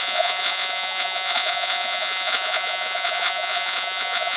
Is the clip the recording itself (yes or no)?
no